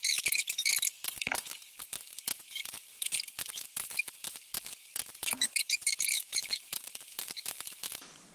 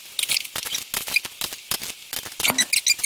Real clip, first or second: second